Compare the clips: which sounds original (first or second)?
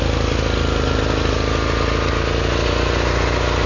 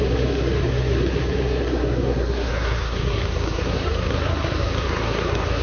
first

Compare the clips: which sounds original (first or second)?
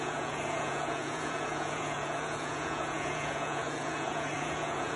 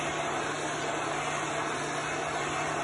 second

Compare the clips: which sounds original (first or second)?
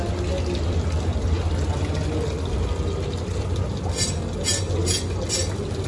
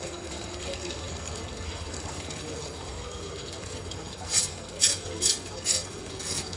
first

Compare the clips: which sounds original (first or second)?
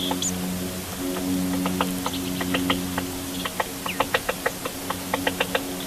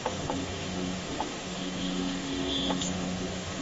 first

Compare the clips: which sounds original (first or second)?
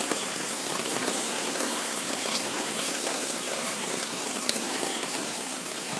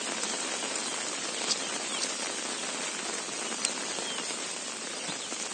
second